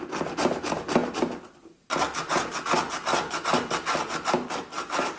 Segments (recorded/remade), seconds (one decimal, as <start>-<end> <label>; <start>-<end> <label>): 0.0-5.2 recorded